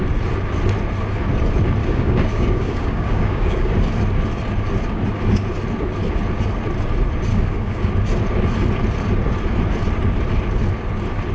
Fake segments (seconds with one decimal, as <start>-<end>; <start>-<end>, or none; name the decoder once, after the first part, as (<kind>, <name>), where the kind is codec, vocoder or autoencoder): 1.8-3.7 (codec, DAC); 7.3-7.9